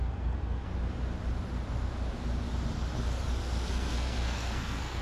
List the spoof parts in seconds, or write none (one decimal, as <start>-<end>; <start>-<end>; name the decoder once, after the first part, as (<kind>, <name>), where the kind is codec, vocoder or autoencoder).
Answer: 0.0-0.7 (codec, SNAC); 3.7-5.0